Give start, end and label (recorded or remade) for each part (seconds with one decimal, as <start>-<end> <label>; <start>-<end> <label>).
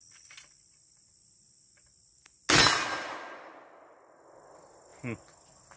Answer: 0.0-5.8 recorded